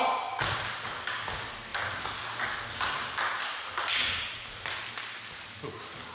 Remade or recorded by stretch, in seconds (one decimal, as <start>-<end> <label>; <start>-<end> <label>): 0.0-6.1 recorded